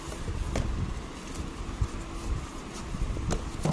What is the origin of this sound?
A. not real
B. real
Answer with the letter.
B